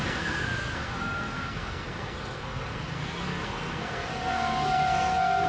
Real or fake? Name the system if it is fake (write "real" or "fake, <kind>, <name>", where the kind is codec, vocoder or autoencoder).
fake, codec, SNAC